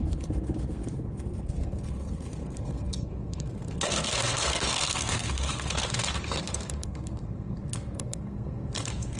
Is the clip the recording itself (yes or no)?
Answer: no